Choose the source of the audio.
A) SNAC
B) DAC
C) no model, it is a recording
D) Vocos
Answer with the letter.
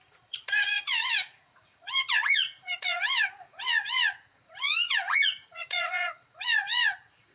D